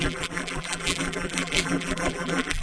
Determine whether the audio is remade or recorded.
remade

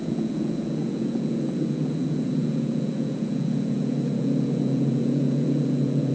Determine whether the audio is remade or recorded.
remade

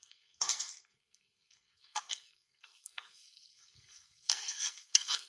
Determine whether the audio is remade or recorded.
remade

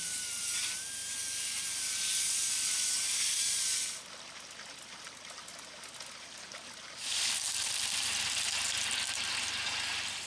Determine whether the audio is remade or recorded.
recorded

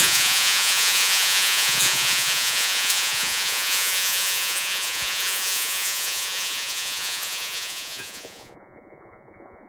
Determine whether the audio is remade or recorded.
remade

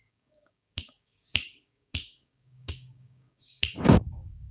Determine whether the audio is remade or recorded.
remade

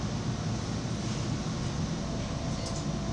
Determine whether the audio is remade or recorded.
recorded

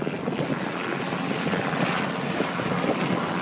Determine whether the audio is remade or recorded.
recorded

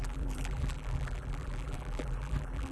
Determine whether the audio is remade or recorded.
remade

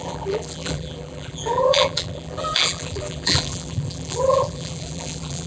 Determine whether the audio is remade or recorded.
remade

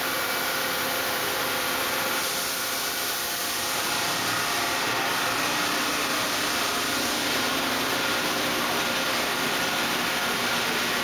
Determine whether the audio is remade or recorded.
recorded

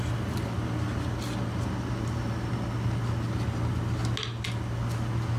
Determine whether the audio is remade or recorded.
recorded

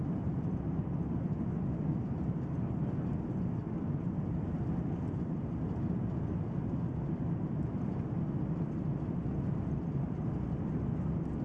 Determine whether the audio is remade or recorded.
recorded